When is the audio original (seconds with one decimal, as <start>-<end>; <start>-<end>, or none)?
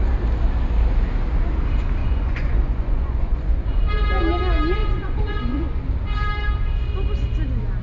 0.0-2.0; 3.9-4.8; 5.8-7.8